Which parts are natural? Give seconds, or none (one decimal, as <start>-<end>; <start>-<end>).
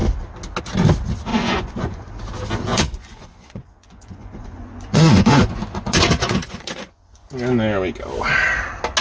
0.0-1.3; 2.1-2.7; 7.3-9.0